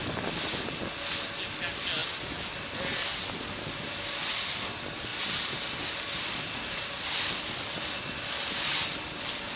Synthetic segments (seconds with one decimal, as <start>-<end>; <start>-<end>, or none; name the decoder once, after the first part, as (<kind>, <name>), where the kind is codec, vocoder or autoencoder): none